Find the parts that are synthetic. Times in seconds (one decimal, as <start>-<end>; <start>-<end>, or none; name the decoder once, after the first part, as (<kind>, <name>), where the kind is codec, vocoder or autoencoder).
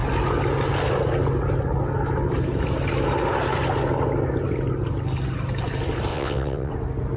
6.1-6.7 (vocoder, WaveNeXt)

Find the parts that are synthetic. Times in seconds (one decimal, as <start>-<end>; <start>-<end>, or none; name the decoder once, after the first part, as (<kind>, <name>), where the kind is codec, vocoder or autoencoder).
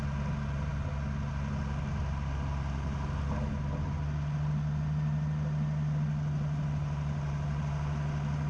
none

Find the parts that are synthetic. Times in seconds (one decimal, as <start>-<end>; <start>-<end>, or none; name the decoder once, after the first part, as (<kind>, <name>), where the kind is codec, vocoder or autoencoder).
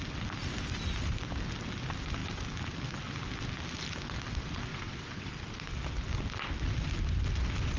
4.7-5.3 (vocoder, WaveNeXt)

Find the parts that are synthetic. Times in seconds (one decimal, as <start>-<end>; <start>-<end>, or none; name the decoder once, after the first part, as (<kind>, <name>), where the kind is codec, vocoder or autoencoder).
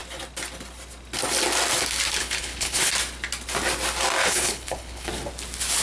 2.2-2.9 (codec, HILCodec); 4.2-5.1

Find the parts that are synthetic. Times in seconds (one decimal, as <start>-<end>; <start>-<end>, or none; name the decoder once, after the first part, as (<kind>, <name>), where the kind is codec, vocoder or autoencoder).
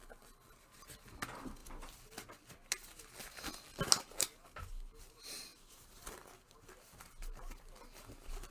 none